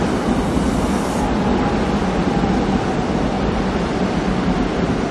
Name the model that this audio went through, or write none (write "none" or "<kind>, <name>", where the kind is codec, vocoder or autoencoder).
none